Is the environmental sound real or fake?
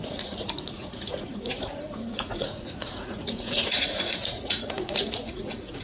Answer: fake